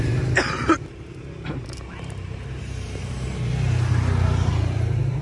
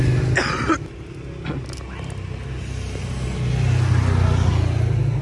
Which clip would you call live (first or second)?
second